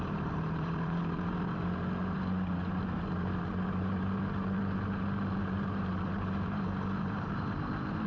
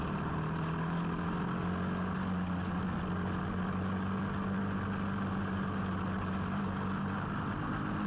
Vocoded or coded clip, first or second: first